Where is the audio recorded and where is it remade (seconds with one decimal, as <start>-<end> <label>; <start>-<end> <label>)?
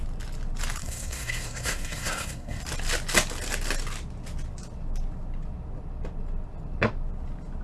0.0-0.8 recorded; 0.8-2.6 remade; 2.6-7.6 recorded